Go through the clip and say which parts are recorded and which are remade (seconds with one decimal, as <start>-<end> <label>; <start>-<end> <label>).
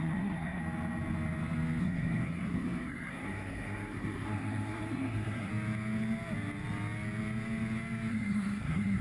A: 0.0-0.6 remade; 0.6-1.8 recorded; 1.8-5.5 remade; 5.5-8.1 recorded; 8.1-9.0 remade